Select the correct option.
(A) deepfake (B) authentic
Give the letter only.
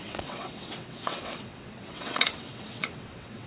A